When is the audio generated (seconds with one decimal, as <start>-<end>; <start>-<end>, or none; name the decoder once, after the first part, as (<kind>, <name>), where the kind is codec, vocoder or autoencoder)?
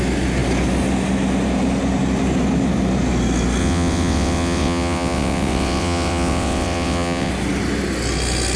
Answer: 3.6-7.3 (vocoder, WaveNeXt)